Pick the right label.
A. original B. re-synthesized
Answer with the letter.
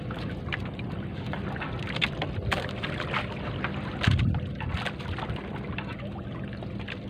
A